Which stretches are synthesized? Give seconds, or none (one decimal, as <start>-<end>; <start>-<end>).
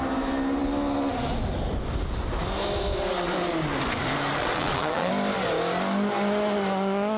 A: 4.4-5.1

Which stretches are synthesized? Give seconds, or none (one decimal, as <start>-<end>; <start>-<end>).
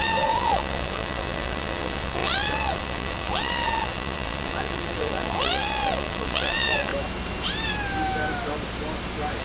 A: 0.0-6.9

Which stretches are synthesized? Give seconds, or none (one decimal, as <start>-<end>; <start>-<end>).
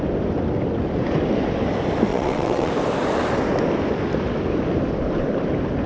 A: 2.1-2.7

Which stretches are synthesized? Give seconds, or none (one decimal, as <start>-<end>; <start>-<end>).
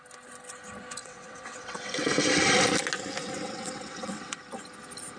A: 1.0-2.1; 3.2-4.4